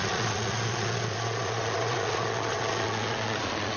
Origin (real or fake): fake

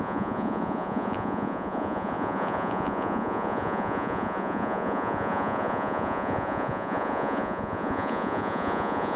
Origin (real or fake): fake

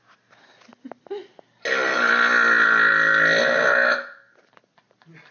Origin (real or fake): real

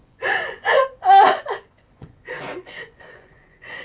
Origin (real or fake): fake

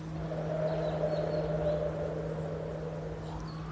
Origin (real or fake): real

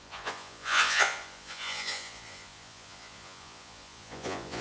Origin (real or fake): fake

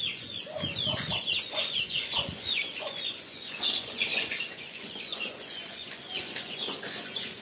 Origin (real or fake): fake